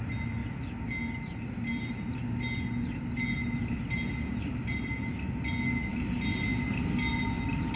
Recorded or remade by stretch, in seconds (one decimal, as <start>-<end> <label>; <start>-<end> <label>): 0.0-7.8 recorded